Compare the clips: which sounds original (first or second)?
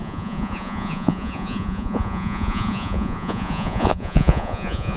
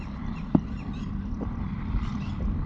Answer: second